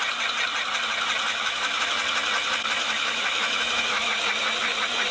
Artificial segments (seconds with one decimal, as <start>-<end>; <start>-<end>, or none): 1.3-1.8; 2.8-4.1